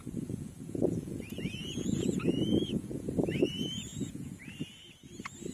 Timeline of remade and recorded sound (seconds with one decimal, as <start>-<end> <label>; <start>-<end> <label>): 0.0-3.3 remade; 3.3-3.9 recorded; 3.9-4.5 remade; 4.5-5.5 recorded

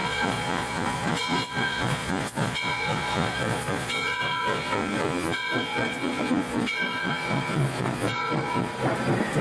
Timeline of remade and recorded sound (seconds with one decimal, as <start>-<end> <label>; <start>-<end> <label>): 0.0-8.7 remade; 8.7-9.4 recorded

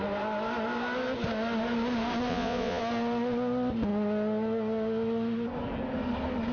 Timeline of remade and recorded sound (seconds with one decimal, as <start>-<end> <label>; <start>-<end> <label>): 0.0-2.3 recorded; 2.3-2.8 remade; 2.8-6.5 recorded

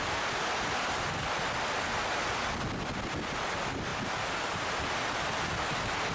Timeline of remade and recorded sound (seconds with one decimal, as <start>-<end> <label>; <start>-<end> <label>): 0.0-6.1 recorded

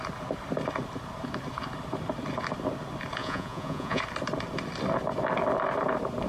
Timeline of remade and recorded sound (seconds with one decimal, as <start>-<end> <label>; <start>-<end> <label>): 0.0-3.2 recorded; 3.2-4.0 remade; 4.0-6.3 recorded

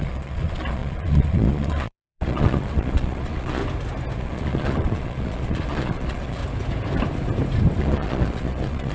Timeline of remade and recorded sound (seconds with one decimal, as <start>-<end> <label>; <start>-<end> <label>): 0.0-3.6 remade; 3.6-4.2 recorded; 4.2-6.4 remade; 6.4-7.8 recorded; 7.8-8.9 remade